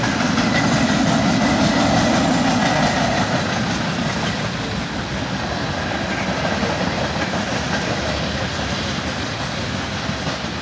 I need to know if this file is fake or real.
real